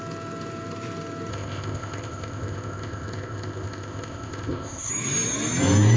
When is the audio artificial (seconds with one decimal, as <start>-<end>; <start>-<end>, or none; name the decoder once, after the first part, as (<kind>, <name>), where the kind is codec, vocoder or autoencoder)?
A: 1.3-4.9 (codec, ZipCodec)

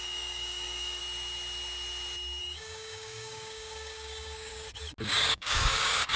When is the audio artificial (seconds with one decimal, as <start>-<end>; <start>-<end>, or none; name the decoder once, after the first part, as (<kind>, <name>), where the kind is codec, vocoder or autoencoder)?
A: 0.0-1.0 (codec, DAC); 2.4-4.5; 5.0-6.2

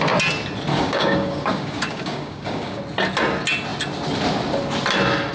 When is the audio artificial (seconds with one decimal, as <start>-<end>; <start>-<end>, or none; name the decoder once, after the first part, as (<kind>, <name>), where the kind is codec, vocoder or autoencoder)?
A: 0.7-2.8 (codec, DAC)

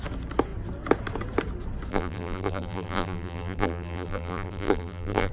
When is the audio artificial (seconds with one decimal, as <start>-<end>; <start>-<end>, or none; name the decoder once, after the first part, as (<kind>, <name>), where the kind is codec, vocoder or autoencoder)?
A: 1.9-5.3 (vocoder, BigVGAN v2)

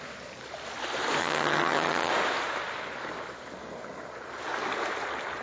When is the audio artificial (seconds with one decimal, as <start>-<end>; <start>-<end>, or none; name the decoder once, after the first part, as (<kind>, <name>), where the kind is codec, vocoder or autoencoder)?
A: 1.2-2.1 (vocoder, HiFi-GAN)

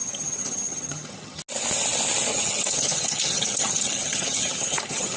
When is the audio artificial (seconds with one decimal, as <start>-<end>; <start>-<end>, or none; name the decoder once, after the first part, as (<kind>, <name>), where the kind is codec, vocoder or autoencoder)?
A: 0.0-1.4 (vocoder, HiFi-GAN); 2.3-5.2